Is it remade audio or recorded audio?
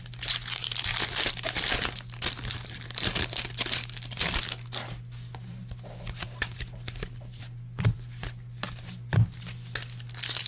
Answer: recorded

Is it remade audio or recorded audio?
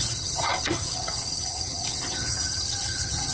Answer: remade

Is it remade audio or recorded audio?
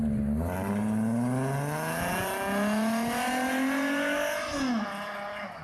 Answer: recorded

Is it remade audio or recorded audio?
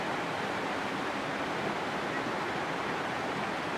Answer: recorded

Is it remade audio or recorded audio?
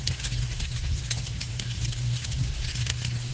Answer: remade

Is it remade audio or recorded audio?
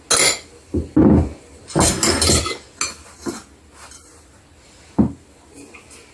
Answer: recorded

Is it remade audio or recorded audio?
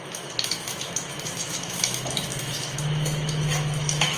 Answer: remade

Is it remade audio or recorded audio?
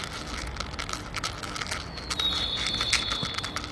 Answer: recorded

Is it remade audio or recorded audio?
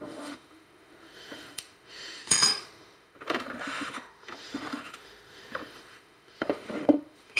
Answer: remade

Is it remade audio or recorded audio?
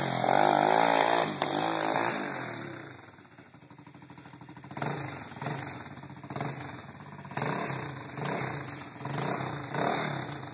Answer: recorded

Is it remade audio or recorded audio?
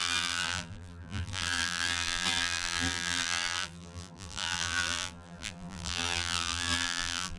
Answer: remade